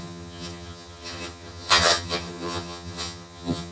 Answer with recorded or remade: remade